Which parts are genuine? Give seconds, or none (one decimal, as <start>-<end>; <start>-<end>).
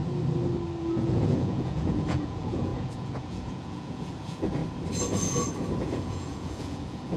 0.0-0.8; 4.6-5.8